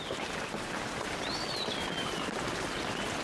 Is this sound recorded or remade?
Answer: recorded